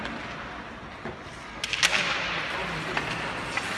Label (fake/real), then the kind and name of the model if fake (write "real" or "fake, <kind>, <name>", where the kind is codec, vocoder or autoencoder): real